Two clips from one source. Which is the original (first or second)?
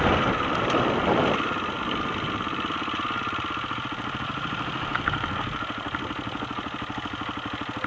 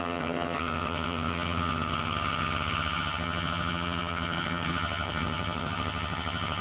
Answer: first